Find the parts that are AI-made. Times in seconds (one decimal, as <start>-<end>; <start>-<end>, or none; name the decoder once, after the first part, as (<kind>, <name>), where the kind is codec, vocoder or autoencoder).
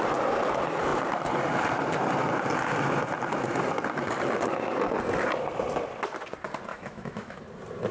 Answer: 6.7-7.4 (autoencoder, DAC-VAE)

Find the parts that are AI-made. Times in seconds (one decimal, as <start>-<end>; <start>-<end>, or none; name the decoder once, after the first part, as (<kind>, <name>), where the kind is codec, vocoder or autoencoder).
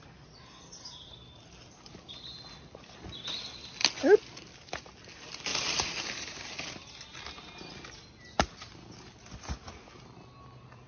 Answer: none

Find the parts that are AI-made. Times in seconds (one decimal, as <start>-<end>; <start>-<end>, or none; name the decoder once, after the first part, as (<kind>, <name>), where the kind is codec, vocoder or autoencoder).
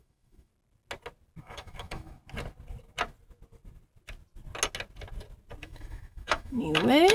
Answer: 0.0-0.5 (autoencoder, DAC-VAE); 1.4-2.2; 5.6-7.1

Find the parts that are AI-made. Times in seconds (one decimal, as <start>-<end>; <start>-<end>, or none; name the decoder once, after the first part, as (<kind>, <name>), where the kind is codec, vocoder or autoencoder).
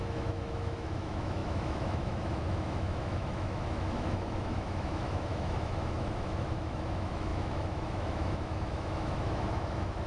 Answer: 0.0-10.1 (autoencoder, DAC-VAE)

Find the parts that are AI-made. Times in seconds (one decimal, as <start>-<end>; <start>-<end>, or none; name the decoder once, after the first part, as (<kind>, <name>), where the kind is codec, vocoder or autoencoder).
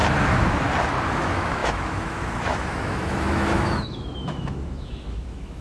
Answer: 1.2-5.6 (autoencoder, DAC-VAE)